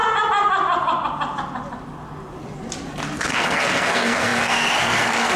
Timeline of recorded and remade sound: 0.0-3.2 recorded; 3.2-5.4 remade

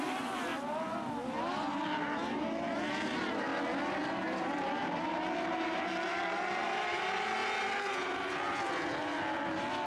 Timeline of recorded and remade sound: 0.0-0.5 remade; 0.5-1.4 recorded; 1.4-3.5 remade; 3.5-4.4 recorded; 4.4-7.4 remade; 7.4-9.9 recorded